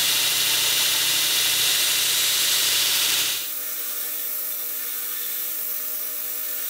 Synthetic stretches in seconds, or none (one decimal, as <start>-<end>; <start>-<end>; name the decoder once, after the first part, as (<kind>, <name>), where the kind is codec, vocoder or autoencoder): 0.0-1.3 (vocoder, BigVGAN v2); 2.6-4.1